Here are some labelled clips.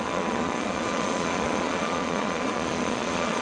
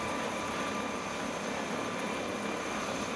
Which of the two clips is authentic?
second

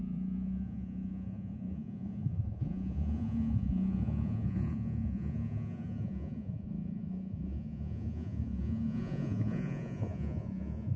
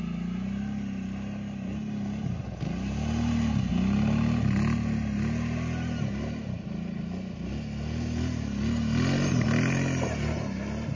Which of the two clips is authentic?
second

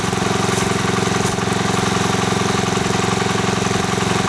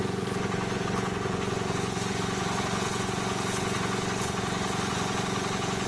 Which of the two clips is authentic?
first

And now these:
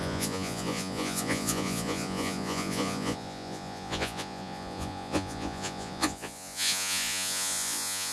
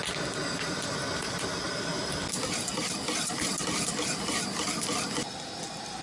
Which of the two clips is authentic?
second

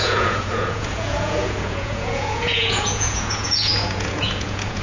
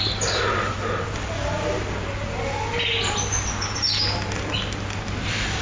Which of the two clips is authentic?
second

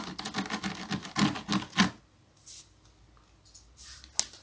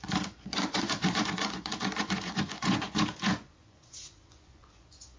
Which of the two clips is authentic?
first